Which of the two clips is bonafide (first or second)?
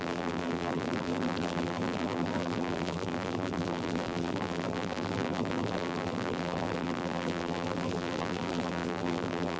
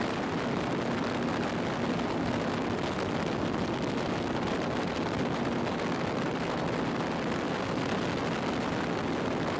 second